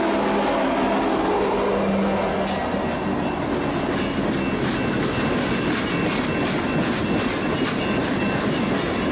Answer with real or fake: real